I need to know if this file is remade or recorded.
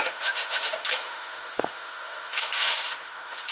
remade